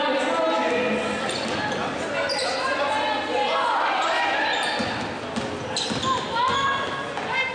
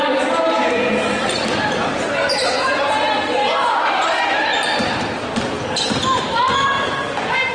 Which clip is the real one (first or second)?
first